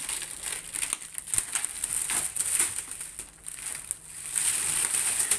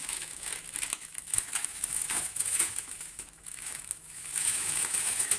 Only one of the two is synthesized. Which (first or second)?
second